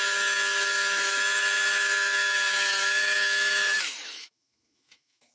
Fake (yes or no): yes